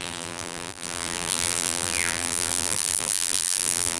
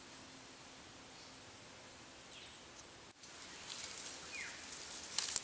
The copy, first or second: first